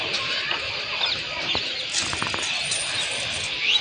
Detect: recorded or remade recorded